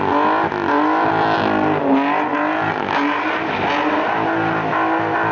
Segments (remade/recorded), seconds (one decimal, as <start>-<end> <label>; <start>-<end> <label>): 0.0-5.3 recorded